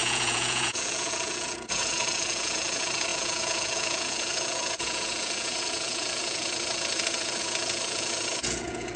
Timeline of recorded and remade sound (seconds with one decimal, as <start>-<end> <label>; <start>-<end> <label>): 0.0-9.0 remade